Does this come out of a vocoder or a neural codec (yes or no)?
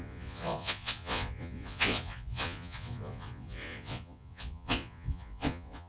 yes